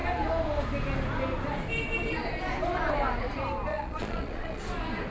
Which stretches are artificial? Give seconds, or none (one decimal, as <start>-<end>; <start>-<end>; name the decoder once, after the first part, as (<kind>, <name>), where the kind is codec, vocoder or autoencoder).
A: 3.7-4.6 (vocoder, Vocos)